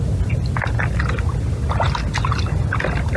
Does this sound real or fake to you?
real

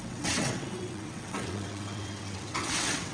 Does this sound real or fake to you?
fake